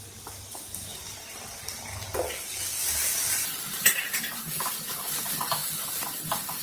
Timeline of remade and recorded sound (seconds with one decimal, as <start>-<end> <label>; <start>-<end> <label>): 0.0-2.8 recorded; 2.8-4.7 remade; 4.7-5.6 recorded; 5.6-6.6 remade